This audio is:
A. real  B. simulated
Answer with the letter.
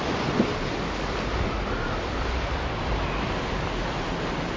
A